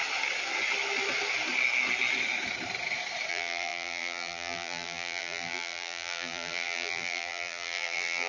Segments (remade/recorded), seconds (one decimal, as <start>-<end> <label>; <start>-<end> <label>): 0.0-3.3 recorded; 3.3-8.3 remade